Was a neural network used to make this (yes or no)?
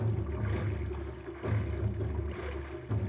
no